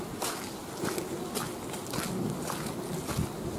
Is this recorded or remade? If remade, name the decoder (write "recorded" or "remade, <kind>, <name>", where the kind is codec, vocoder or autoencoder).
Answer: recorded